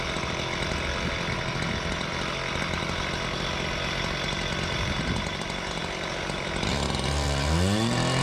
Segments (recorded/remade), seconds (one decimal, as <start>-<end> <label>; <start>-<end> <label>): 0.0-8.2 recorded